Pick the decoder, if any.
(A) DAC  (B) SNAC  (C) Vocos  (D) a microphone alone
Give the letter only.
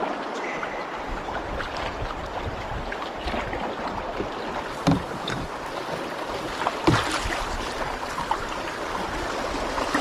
D